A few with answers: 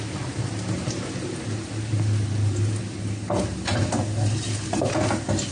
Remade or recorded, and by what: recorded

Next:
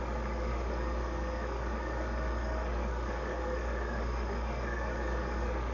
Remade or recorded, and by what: remade, codec, DAC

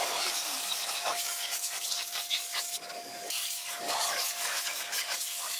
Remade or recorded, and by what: remade, codec, DAC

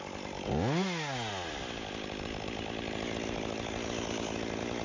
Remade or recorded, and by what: recorded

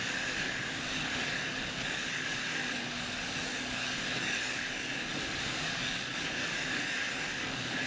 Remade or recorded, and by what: remade, codec, DAC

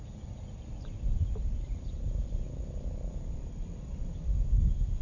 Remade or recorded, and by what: recorded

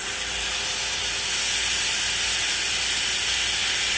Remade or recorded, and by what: recorded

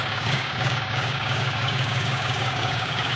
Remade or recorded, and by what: remade, codec, DAC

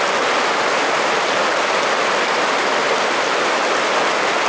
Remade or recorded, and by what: recorded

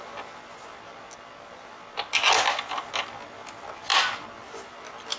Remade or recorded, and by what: recorded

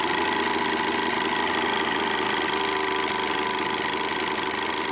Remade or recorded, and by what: recorded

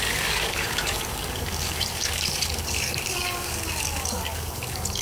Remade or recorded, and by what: remade, codec, DAC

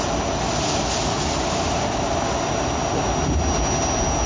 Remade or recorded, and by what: recorded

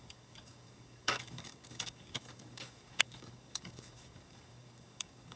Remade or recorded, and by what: remade, codec, DAC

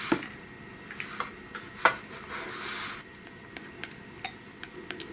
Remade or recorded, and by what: recorded